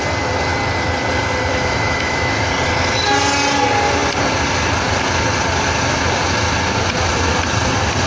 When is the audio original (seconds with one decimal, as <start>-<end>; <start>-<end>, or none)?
0.0-1.5; 2.5-8.1